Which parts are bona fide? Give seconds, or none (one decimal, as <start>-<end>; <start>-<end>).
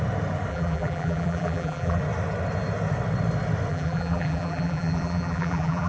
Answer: 0.0-0.5; 2.0-3.7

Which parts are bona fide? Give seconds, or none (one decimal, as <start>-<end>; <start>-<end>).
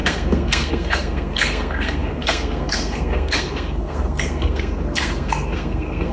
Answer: none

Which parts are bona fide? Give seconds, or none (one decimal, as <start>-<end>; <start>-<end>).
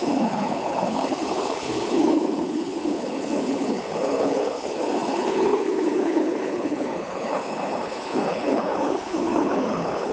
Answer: none